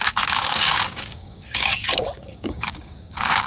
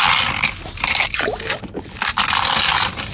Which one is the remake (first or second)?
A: first